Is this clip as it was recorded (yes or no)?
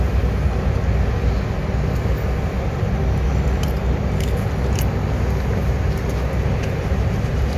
yes